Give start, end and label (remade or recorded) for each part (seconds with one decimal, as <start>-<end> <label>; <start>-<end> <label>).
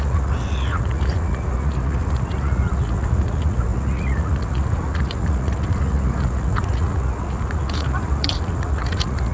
0.0-9.3 remade